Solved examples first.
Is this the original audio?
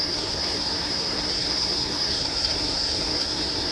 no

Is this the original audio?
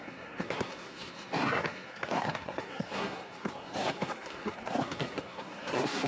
no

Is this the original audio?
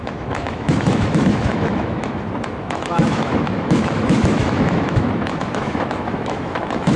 no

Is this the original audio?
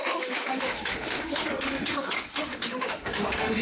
no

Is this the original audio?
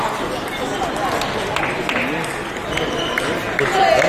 yes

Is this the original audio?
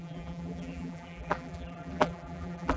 no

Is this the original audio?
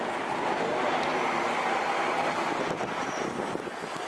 yes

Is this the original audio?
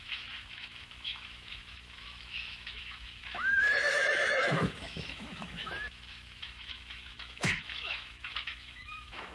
no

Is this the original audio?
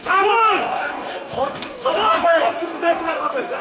no